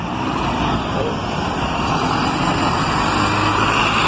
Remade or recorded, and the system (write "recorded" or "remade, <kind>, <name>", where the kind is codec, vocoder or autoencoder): recorded